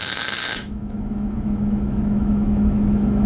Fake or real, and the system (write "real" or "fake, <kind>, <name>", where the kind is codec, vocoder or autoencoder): fake, autoencoder, DAC-VAE